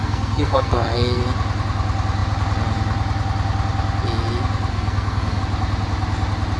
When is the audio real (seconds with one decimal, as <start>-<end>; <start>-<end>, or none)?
1.2-4.7; 5.4-6.6